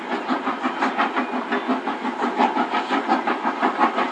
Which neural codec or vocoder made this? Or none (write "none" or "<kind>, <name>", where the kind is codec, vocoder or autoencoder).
none